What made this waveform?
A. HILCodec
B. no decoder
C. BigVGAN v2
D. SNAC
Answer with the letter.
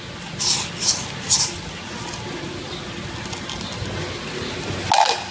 B